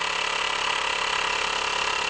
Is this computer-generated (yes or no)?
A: no